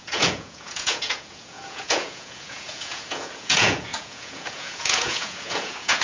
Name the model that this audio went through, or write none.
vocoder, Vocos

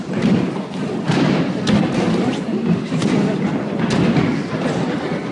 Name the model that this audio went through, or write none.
none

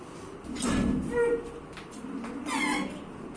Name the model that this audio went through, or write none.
none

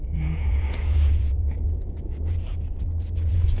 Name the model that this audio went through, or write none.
vocoder, Vocos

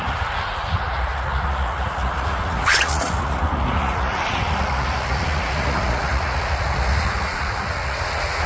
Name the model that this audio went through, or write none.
vocoder, Vocos